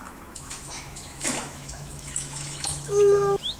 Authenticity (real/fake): fake